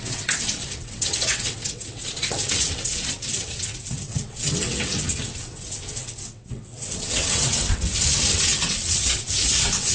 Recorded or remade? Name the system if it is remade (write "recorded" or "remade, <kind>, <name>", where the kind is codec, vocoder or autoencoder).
remade, vocoder, WaveNeXt